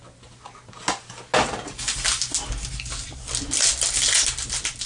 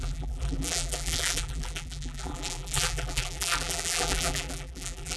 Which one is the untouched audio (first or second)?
first